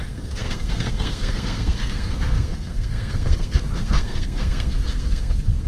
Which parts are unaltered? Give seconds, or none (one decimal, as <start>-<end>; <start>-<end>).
none